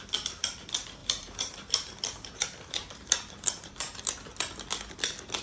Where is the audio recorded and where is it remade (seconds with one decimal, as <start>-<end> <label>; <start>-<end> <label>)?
0.0-1.0 recorded; 1.0-4.0 remade; 4.0-5.4 recorded